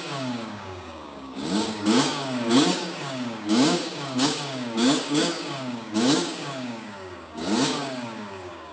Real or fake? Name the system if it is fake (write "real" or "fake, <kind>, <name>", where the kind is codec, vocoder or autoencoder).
fake, codec, DAC